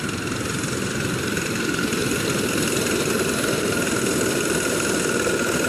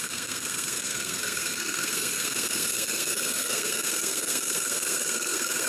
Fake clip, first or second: second